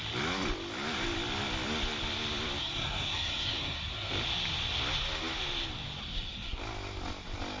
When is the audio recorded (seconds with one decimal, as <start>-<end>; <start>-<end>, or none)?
0.0-2.6; 4.1-6.0; 6.6-7.6